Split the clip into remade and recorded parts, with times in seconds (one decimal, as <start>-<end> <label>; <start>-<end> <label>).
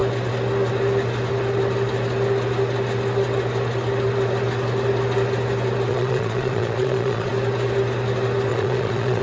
0.0-5.9 recorded; 5.9-7.3 remade; 7.3-8.5 recorded; 8.5-9.2 remade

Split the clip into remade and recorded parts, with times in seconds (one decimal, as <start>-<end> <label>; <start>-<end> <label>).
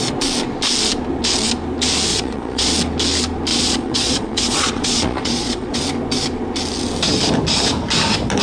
0.0-2.1 recorded; 2.1-2.7 remade; 2.7-3.5 recorded; 3.5-5.8 remade; 5.8-8.4 recorded